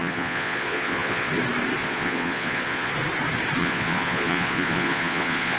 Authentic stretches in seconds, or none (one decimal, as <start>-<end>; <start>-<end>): 1.3-1.8; 2.9-3.6